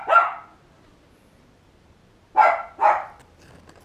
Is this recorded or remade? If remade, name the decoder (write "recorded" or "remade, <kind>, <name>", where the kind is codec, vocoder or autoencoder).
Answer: recorded